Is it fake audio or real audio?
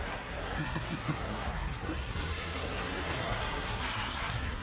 fake